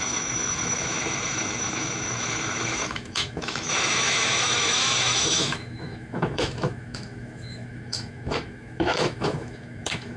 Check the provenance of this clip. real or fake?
fake